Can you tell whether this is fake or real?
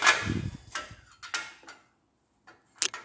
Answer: real